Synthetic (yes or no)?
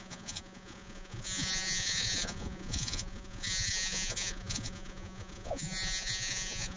yes